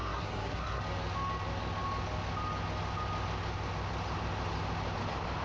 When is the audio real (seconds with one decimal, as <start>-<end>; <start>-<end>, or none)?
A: 0.8-5.4